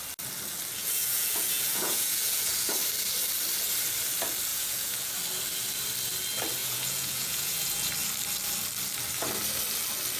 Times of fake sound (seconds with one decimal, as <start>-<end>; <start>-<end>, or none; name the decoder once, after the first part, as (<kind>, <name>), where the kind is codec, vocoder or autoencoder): 0.8-2.7 (vocoder, Vocos); 4.5-5.1; 6.6-7.9